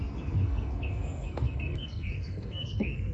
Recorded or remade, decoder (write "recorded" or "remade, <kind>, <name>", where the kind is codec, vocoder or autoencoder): remade, codec, SNAC